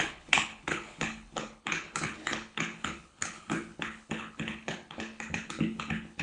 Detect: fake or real fake